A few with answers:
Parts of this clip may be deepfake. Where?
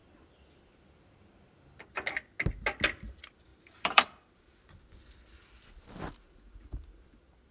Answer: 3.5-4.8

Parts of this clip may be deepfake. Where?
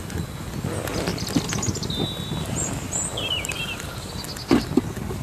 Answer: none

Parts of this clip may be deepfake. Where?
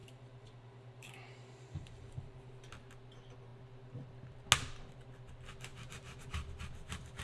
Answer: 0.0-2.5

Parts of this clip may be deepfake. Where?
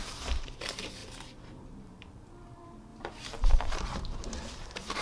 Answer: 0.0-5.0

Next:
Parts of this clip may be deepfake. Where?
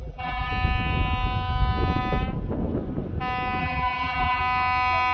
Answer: 0.0-0.5; 3.6-4.4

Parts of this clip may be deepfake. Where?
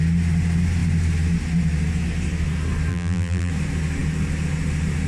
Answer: 2.9-3.5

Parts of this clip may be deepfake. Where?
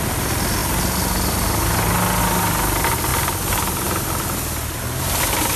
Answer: none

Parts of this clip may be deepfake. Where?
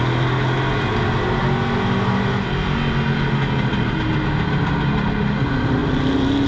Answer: none